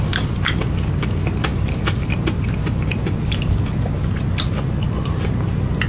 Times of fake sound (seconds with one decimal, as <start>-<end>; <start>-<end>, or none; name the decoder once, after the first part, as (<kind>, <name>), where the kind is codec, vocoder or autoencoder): none